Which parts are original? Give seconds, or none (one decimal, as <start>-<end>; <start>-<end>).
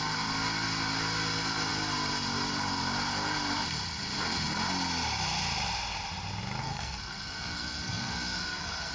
0.0-6.6